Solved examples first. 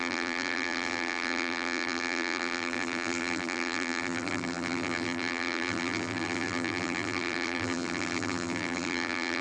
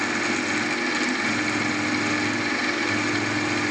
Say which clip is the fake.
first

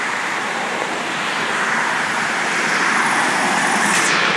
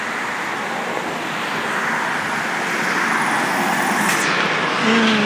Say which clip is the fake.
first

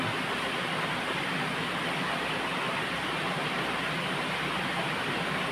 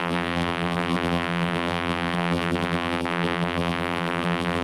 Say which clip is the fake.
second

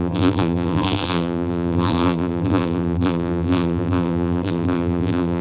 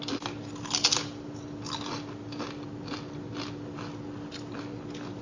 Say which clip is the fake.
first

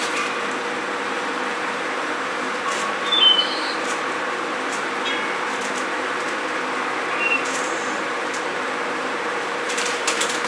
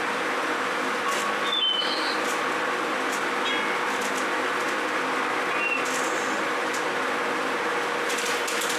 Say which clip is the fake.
first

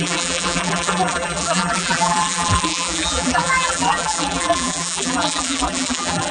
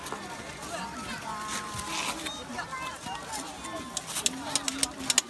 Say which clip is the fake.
first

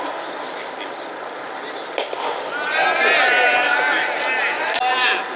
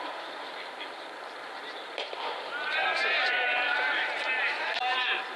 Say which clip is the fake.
second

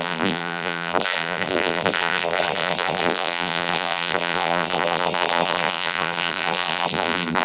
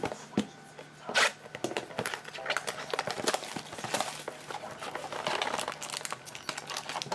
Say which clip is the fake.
first